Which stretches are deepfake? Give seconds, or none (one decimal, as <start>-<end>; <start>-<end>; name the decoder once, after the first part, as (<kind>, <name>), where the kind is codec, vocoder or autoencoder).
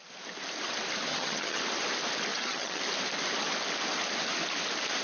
1.1-1.6 (vocoder, HiFi-GAN); 2.3-2.8